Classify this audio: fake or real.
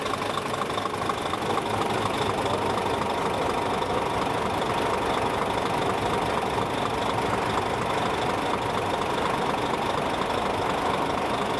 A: real